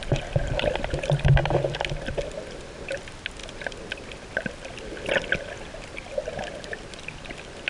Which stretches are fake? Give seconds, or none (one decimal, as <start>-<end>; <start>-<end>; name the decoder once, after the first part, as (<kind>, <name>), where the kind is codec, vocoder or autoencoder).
none